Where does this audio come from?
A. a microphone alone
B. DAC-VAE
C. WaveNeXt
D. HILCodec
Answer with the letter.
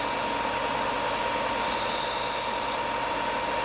A